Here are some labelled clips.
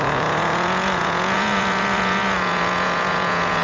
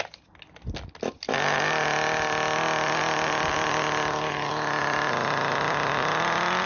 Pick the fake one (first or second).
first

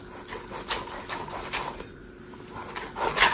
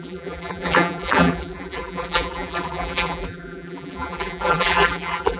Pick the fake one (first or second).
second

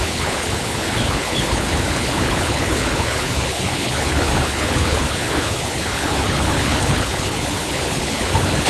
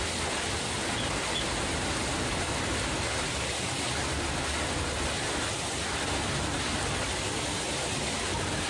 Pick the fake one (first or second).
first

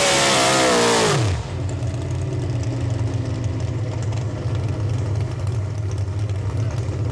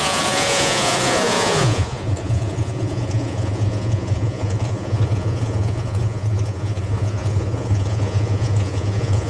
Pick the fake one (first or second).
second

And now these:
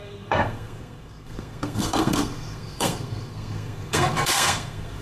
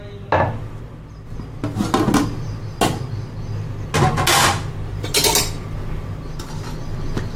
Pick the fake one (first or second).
first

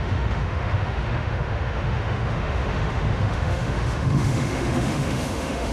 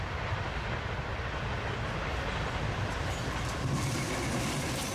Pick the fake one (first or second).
first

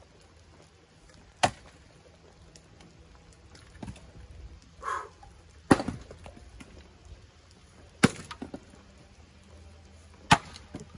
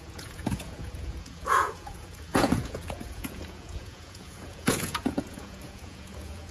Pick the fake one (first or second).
second